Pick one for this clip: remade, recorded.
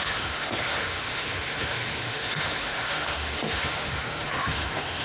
remade